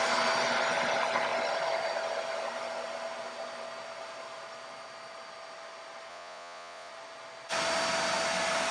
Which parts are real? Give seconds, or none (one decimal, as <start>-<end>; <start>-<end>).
0.0-6.1; 6.9-8.7